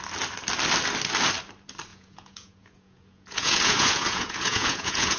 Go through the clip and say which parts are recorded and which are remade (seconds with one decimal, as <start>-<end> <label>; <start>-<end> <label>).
0.0-1.9 recorded; 1.9-5.2 remade